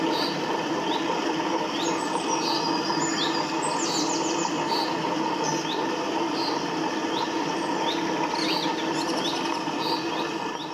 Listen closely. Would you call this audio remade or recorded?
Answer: recorded